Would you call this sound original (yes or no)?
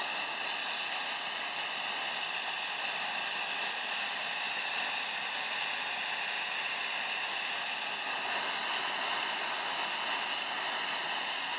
yes